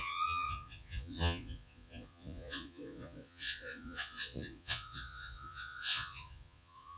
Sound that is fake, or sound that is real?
fake